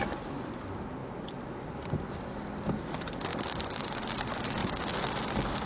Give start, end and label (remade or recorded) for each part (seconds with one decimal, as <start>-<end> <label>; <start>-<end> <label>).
0.0-4.6 recorded; 4.6-5.2 remade; 5.2-5.7 recorded